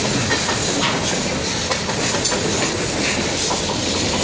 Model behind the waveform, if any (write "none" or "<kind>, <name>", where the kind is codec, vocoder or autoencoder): none